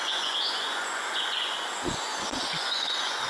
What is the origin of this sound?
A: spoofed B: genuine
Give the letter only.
A